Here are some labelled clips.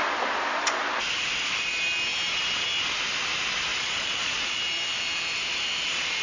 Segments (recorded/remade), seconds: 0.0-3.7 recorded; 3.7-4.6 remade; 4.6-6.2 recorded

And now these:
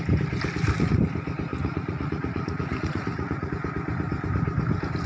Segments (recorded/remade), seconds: 0.0-1.5 recorded; 1.5-3.5 remade; 3.5-5.1 recorded

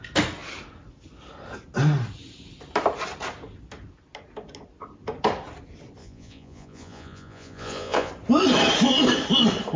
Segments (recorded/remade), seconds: 0.0-6.0 recorded; 6.0-8.1 remade; 8.1-9.8 recorded

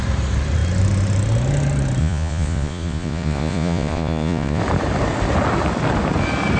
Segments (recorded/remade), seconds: 0.0-2.0 recorded; 2.0-4.6 remade; 4.6-6.6 recorded